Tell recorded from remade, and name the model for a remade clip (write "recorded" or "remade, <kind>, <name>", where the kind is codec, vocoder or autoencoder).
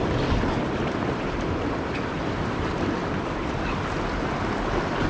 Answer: recorded